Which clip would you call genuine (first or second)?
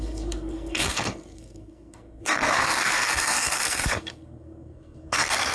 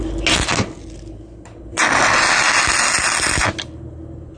second